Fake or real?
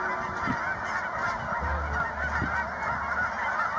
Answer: real